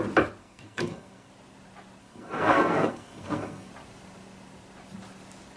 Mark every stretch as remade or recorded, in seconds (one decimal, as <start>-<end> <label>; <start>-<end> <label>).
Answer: 0.0-0.4 recorded; 0.4-1.3 remade; 1.3-2.0 recorded; 2.0-3.7 remade; 3.7-5.6 recorded